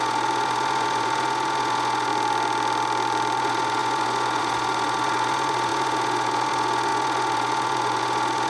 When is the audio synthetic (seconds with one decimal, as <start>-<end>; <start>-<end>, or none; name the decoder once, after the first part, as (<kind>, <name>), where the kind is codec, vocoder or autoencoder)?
0.0-2.1 (vocoder, Vocos); 3.4-8.5